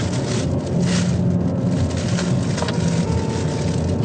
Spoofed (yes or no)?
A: no